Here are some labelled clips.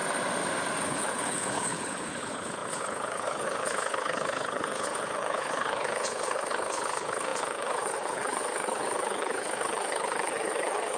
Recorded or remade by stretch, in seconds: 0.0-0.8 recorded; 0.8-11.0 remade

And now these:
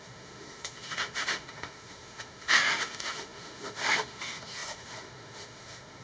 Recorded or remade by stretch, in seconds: 0.0-6.0 remade

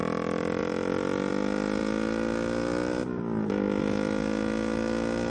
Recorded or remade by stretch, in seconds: 0.0-5.3 recorded

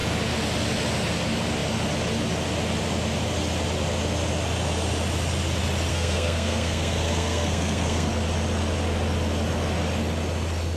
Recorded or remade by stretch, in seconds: 0.0-5.9 recorded; 5.9-8.1 remade; 8.1-10.8 recorded